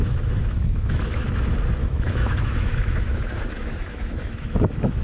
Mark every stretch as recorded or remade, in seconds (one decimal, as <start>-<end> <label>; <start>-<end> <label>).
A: 0.0-1.2 remade; 1.2-1.8 recorded; 1.8-5.0 remade